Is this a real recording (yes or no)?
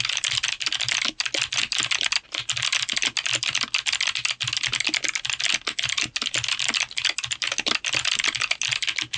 yes